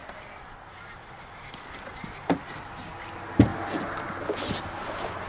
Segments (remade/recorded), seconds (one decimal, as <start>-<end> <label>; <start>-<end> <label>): 0.0-5.3 recorded